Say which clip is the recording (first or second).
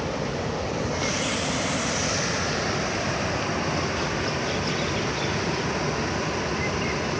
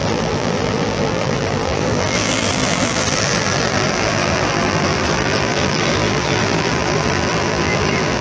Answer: first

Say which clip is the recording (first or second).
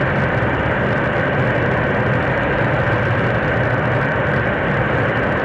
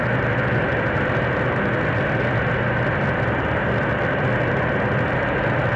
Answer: second